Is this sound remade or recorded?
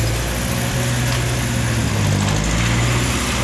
recorded